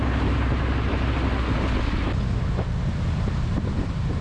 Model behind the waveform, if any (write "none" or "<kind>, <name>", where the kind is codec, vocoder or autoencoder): none